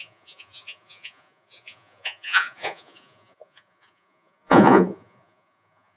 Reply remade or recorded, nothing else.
remade